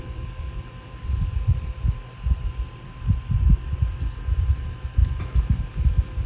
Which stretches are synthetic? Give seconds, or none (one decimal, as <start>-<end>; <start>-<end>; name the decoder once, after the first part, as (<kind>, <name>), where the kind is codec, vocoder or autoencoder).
0.0-6.3 (vocoder, BigVGAN v2)